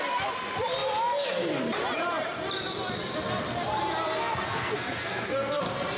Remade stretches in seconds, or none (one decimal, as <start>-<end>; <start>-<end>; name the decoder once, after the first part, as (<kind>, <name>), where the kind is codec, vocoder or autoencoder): 4.1-5.6 (codec, SNAC)